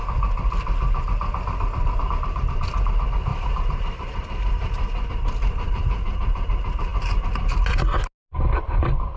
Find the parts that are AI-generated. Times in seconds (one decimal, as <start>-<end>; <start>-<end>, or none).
3.3-5.1